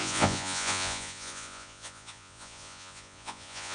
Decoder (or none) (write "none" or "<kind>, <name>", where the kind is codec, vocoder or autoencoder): vocoder, Vocos